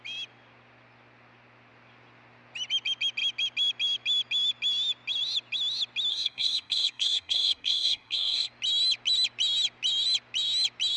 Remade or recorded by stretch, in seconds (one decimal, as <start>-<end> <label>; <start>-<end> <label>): 0.0-6.1 recorded; 6.1-8.5 remade; 8.5-11.0 recorded